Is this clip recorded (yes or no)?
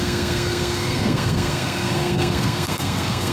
no